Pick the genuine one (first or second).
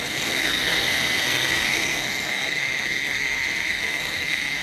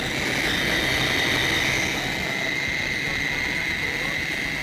second